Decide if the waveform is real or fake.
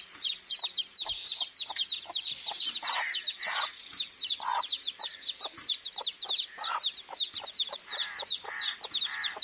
fake